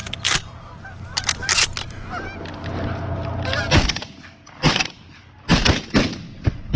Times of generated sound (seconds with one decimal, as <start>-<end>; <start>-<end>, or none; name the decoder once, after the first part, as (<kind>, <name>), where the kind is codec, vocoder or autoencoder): none